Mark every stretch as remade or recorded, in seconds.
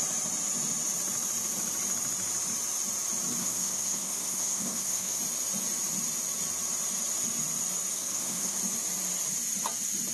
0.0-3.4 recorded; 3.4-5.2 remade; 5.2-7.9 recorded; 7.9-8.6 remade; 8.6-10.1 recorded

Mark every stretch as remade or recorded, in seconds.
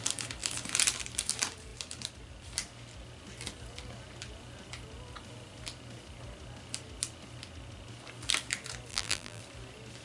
0.0-8.9 recorded; 8.9-9.4 remade; 9.4-10.0 recorded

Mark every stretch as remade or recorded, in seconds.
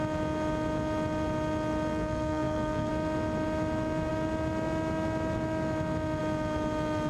0.0-1.9 recorded; 1.9-2.9 remade; 2.9-7.1 recorded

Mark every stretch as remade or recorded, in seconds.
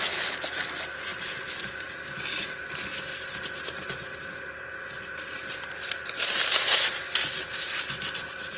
0.0-1.1 recorded; 1.1-1.7 remade; 1.7-8.6 recorded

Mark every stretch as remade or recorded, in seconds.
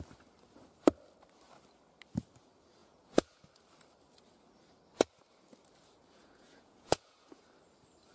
0.0-2.8 recorded; 2.8-3.4 remade; 3.4-6.2 recorded; 6.2-7.4 remade; 7.4-8.1 recorded